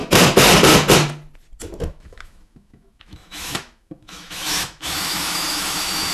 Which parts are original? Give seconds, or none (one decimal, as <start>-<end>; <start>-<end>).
0.0-1.9